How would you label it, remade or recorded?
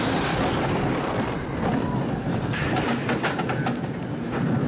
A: recorded